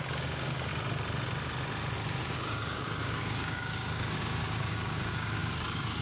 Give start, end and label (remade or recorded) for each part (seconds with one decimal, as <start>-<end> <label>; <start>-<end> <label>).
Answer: 0.0-0.7 remade; 0.7-2.2 recorded; 2.2-6.0 remade